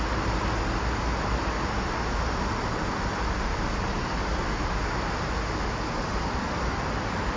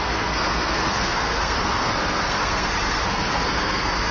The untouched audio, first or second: first